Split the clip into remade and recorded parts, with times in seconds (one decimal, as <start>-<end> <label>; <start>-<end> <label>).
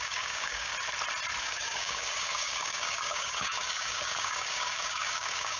0.0-0.7 remade; 0.7-1.4 recorded; 1.4-5.6 remade